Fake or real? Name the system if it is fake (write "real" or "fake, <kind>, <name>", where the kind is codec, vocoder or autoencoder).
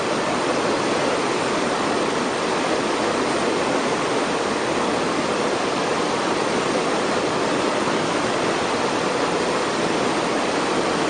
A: real